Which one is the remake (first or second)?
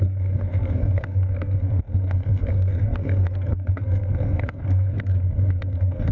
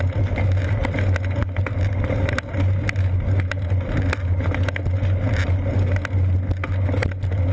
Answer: first